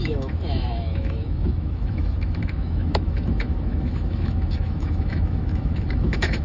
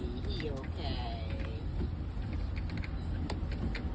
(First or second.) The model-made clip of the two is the first